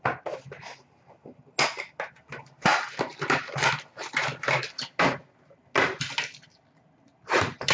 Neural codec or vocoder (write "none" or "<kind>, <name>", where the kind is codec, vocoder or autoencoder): none